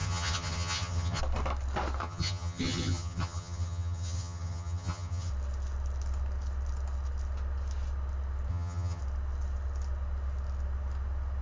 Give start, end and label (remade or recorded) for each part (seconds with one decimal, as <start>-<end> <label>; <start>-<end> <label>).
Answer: 0.0-1.2 remade; 1.2-2.0 recorded; 2.0-5.3 remade; 5.3-8.5 recorded; 8.5-9.0 remade; 9.0-11.4 recorded